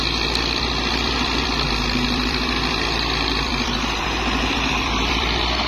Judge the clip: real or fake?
fake